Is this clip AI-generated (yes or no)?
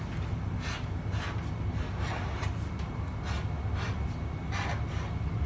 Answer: no